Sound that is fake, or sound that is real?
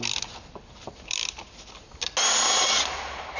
real